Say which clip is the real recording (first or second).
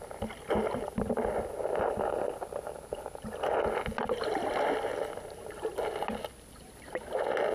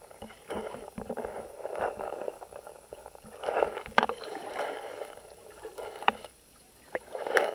first